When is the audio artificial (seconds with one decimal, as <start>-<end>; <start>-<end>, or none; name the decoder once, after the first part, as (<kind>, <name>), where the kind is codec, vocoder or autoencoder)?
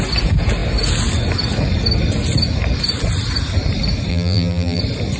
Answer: 4.1-4.8 (vocoder, BigVGAN v2)